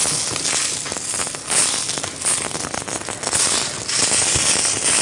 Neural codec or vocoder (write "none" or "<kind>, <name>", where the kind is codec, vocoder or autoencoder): none